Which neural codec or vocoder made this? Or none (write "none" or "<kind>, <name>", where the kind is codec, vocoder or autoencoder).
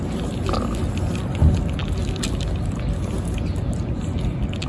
none